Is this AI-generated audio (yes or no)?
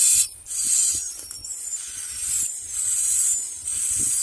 yes